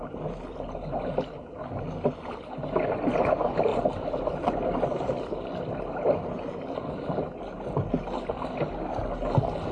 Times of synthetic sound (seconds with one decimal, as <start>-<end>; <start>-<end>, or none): 3.7-6.5